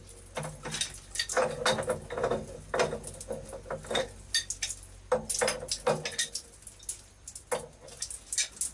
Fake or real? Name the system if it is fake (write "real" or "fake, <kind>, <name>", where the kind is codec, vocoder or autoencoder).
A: real